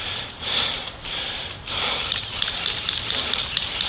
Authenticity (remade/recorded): remade